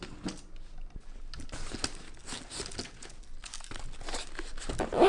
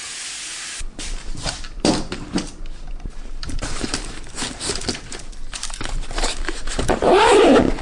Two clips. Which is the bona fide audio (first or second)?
first